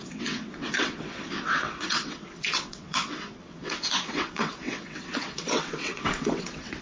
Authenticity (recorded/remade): remade